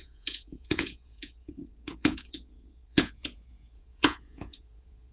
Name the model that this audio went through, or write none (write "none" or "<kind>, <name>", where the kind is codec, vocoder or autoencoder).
vocoder, Vocos